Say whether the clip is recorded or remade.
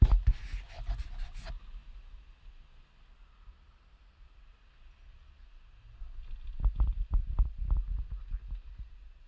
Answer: recorded